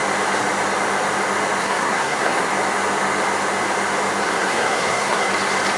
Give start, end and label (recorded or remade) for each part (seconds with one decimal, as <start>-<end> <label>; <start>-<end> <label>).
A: 0.0-1.6 recorded; 1.6-2.5 remade; 2.5-4.2 recorded; 4.2-5.3 remade; 5.3-5.8 recorded